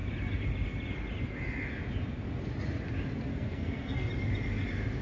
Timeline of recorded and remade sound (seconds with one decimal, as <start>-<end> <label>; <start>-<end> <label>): 0.0-3.3 recorded; 3.3-4.1 remade; 4.1-5.0 recorded